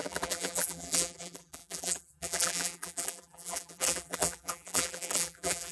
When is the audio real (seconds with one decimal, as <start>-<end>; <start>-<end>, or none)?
none